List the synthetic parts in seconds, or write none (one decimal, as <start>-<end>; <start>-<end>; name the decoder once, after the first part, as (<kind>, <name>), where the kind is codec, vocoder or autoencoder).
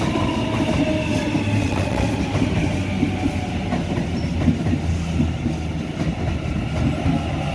1.6-2.1 (vocoder, WaveNeXt)